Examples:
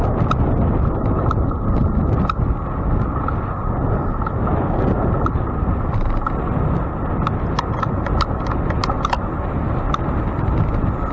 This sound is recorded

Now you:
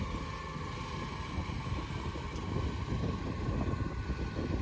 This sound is recorded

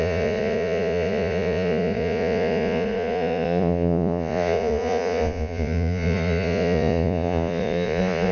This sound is remade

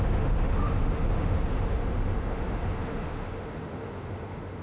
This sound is remade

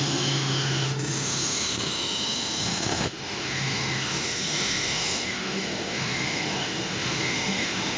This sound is remade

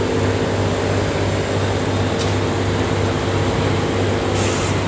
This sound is recorded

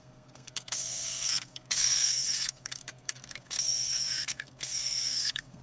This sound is remade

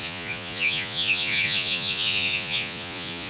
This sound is remade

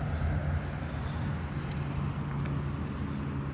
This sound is recorded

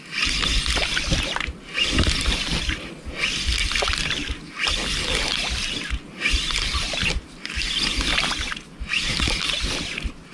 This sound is recorded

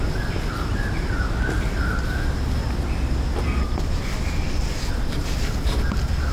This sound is recorded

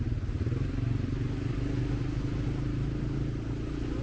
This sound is recorded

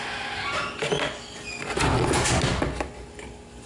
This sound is recorded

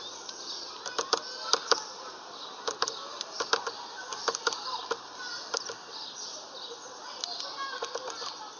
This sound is recorded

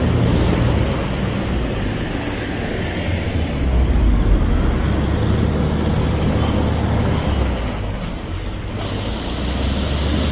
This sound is recorded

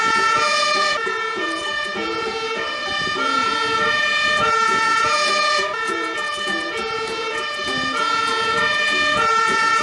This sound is remade